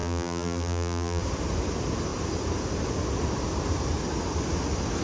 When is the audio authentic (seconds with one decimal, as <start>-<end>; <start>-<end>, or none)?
1.2-5.0